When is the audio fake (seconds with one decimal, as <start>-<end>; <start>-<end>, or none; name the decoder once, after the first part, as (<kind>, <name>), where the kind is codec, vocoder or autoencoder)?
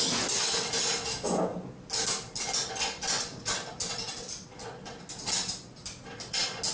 none